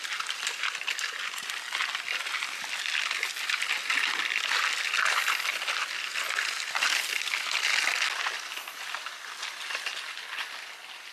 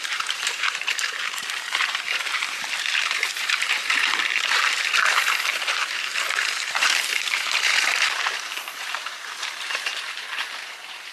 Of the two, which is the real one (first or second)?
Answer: first